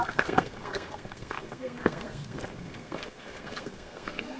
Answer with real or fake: fake